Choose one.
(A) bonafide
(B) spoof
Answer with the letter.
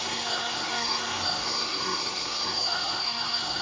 B